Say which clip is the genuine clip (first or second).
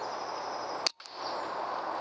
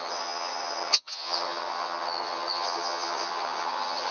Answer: first